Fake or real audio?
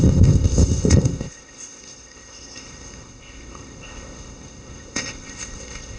fake